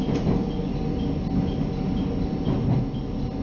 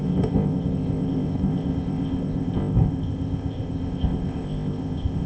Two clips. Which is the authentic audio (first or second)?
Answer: first